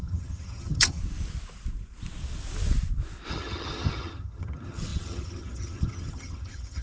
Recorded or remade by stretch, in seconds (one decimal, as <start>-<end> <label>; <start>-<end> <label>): 0.0-1.0 remade; 1.0-3.3 recorded; 3.3-6.8 remade